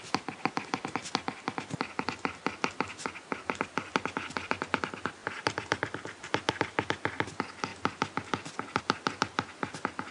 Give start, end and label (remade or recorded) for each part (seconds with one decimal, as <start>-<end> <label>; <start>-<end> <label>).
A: 0.0-10.1 recorded